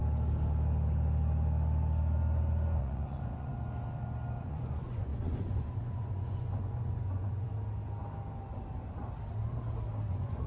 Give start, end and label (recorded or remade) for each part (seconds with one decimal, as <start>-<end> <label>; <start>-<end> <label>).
0.0-2.8 recorded; 2.8-3.5 remade; 3.5-4.4 recorded; 4.4-7.5 remade; 7.5-10.1 recorded; 10.1-10.5 remade